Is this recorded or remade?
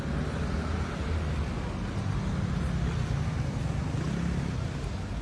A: recorded